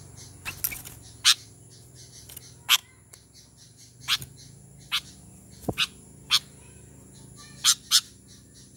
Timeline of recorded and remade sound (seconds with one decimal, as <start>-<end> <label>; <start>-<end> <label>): 0.0-8.8 recorded